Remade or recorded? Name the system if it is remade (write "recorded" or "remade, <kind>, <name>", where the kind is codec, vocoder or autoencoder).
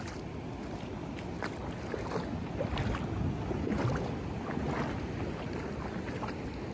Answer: recorded